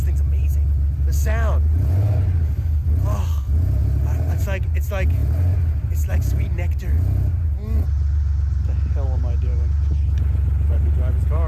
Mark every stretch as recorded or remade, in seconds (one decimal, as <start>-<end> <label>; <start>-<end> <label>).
0.0-11.5 recorded